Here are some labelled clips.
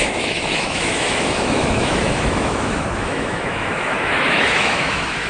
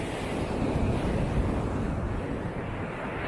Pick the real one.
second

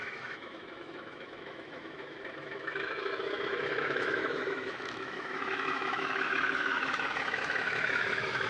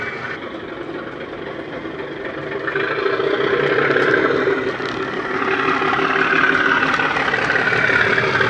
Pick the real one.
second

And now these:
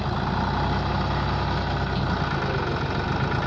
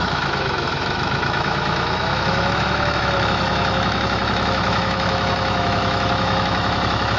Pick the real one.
first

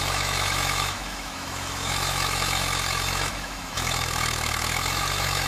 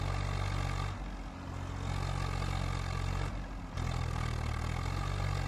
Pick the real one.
second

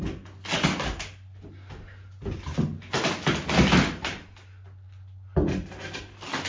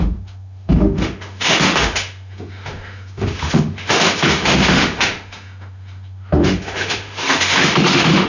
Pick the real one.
first